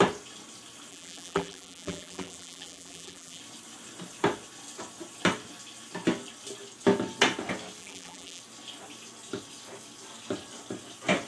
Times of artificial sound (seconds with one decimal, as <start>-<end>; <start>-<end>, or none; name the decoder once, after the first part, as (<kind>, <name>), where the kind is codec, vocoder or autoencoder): 0.9-3.4 (vocoder, BigVGAN v2); 7.8-8.4